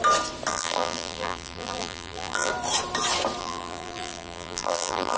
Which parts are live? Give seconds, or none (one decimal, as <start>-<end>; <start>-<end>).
0.0-0.5; 2.5-3.4